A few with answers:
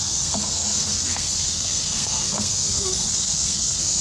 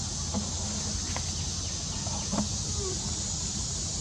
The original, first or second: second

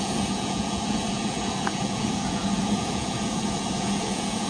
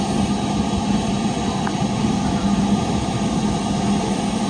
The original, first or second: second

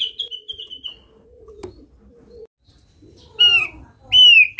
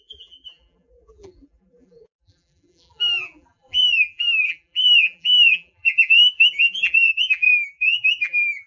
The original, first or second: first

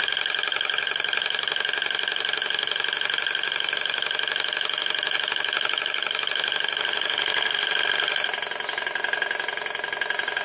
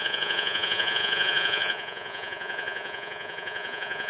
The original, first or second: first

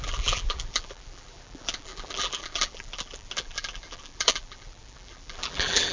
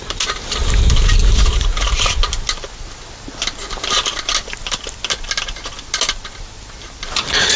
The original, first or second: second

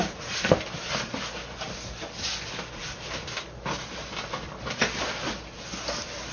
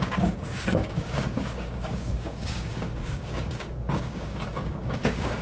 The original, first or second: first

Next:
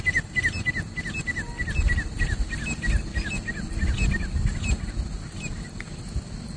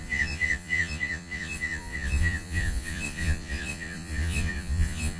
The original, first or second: first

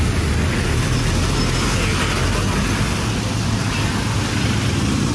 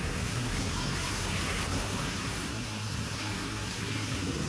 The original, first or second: first